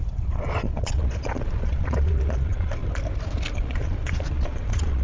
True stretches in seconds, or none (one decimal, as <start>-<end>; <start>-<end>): 2.8-3.5